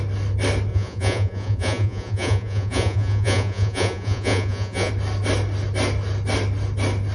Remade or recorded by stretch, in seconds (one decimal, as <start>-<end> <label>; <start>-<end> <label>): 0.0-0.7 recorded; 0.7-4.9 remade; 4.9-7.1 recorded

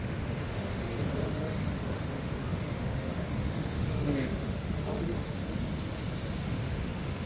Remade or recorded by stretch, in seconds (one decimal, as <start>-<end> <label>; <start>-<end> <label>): 0.0-5.4 remade; 5.4-6.4 recorded; 6.4-7.3 remade

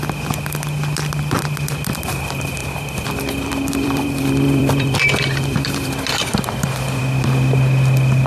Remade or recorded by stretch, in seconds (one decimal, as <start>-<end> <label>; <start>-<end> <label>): 0.0-2.6 recorded; 2.6-7.0 remade; 7.0-8.3 recorded

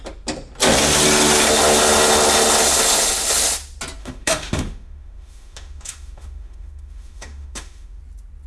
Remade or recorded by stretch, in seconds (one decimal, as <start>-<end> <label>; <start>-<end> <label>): 0.0-4.0 recorded; 4.0-8.0 remade; 8.0-8.5 recorded

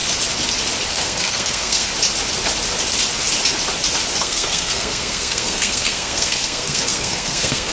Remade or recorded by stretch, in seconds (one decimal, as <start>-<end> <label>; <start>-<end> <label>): 0.0-0.9 recorded; 0.9-1.9 remade; 1.9-4.2 recorded; 4.2-7.7 remade

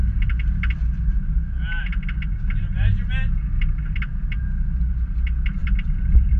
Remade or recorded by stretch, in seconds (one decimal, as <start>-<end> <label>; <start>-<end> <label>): 0.0-5.6 recorded; 5.6-6.4 remade

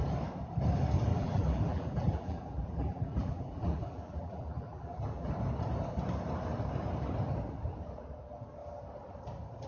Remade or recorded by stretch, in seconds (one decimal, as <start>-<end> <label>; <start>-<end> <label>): 0.0-1.1 recorded; 1.1-5.3 remade; 5.3-9.7 recorded